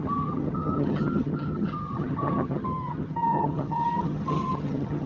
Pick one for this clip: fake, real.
fake